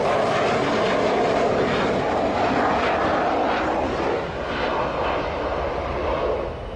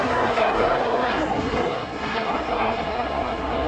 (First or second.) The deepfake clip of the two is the second